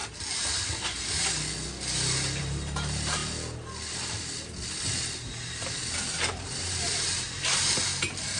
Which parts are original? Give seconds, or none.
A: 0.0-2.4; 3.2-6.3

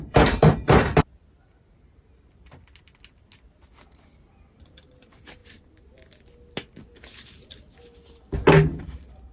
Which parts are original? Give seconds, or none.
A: 0.9-4.5; 5.4-8.8

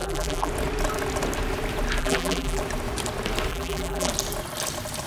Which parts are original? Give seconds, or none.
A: 0.5-2.0; 2.6-3.5; 4.1-5.1

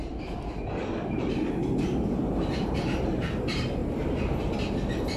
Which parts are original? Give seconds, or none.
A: 0.0-3.8; 4.5-5.2

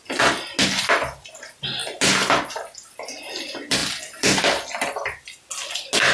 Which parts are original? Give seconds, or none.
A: 0.0-6.1

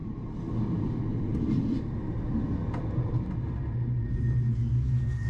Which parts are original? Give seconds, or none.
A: 0.0-5.3

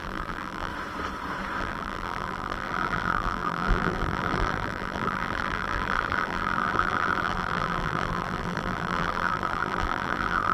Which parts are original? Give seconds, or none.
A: 0.7-1.6